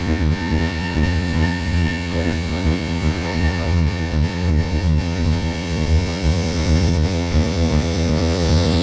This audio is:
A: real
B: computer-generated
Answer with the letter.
B